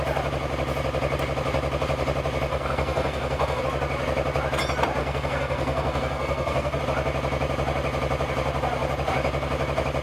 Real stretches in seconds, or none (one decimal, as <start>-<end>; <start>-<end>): 0.0-2.5; 3.6-5.0; 6.8-10.0